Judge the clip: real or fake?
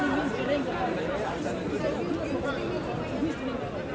real